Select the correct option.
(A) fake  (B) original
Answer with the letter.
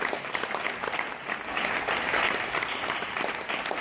B